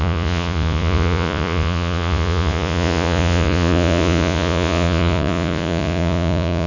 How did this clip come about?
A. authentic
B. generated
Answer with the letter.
B